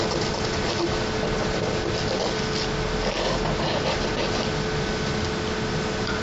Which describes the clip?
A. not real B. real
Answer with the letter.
B